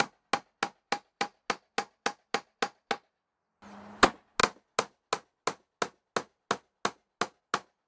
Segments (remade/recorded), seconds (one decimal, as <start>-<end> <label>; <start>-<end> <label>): 0.0-7.9 recorded